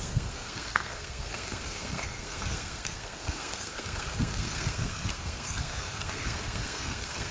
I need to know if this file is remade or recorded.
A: remade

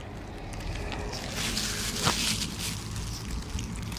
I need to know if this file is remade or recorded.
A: recorded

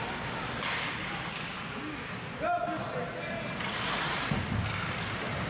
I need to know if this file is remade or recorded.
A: recorded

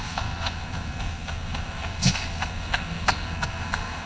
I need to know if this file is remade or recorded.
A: remade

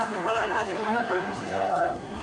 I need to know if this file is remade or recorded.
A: remade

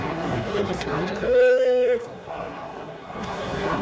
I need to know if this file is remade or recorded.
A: remade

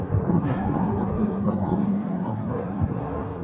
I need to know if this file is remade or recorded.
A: remade